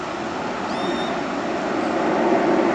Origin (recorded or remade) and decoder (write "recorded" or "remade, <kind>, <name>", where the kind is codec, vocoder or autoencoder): recorded